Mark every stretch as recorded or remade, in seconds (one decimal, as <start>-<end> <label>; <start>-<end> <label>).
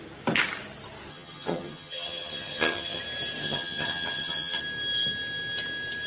0.0-1.1 recorded; 1.1-3.0 remade; 3.0-3.4 recorded; 3.4-4.6 remade; 4.6-6.1 recorded